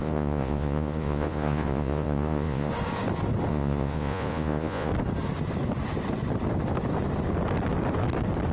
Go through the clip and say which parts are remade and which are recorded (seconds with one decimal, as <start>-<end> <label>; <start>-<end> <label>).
0.0-2.7 remade; 2.7-3.5 recorded; 3.5-4.9 remade; 4.9-8.5 recorded